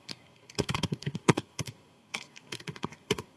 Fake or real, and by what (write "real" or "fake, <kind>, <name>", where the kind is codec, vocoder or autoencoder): fake, codec, SNAC